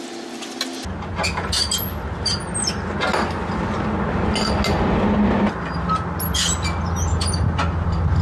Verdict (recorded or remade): recorded